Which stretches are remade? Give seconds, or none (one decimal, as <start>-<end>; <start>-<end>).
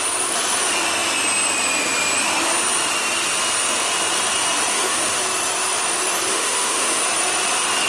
4.7-5.2; 6.3-7.0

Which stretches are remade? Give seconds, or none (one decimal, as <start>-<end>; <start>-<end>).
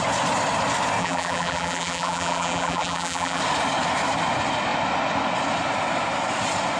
1.0-3.4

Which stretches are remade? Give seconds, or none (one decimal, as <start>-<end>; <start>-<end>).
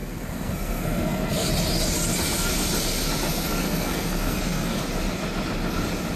0.0-1.5; 3.3-4.8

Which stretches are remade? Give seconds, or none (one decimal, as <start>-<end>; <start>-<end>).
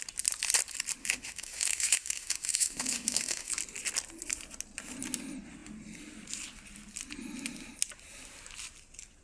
1.0-3.5